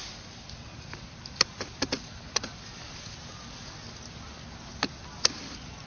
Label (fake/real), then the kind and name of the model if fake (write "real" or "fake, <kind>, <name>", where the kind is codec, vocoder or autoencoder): real